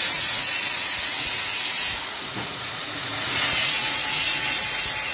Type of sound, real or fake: fake